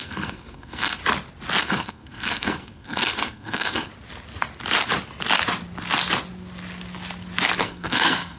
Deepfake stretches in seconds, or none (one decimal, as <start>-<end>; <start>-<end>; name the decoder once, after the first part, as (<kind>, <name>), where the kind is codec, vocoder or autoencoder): 0.0-1.0 (codec, SNAC); 1.6-3.9; 7.6-8.4